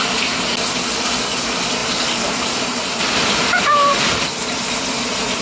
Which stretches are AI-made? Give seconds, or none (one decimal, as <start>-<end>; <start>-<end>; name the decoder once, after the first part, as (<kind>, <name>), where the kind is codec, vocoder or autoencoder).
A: 1.8-4.8 (vocoder, BigVGAN v2)